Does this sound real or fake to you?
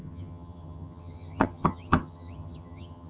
fake